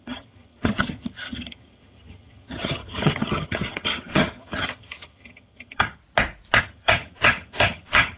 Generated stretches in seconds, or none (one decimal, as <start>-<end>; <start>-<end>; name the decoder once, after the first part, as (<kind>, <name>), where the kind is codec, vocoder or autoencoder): 0.0-6.0 (vocoder, HiFi-GAN); 6.6-8.2